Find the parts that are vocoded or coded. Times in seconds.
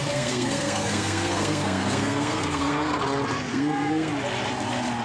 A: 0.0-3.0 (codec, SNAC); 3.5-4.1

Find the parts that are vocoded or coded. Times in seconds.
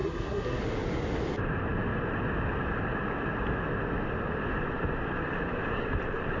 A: 0.0-0.6 (codec, SNAC)